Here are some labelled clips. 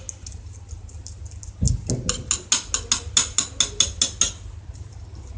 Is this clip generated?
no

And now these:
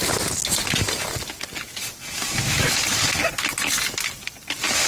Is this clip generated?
no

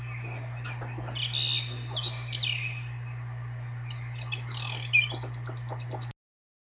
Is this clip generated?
no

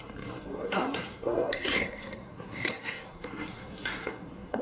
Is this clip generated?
yes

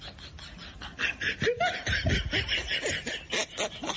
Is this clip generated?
no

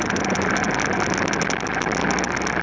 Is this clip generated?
no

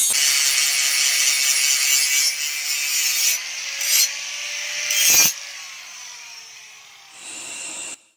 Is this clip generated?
no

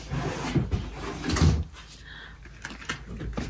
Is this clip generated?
no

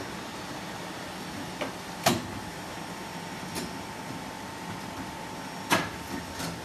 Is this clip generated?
no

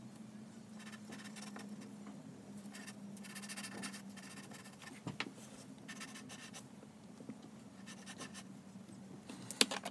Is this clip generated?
no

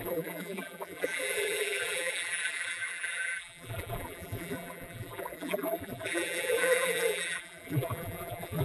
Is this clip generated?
yes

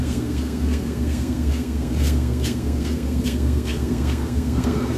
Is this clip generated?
yes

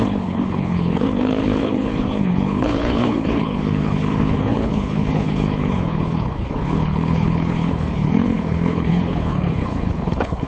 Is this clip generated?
yes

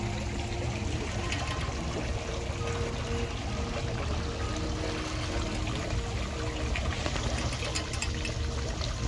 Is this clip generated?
no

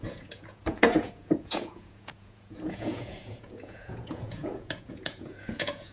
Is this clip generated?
yes